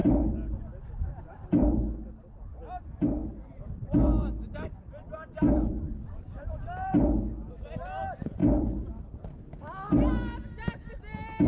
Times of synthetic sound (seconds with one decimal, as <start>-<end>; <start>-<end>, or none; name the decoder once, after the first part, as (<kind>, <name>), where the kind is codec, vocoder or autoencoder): 0.0-2.5 (vocoder, BigVGAN v2); 3.2-7.2; 8.4-9.0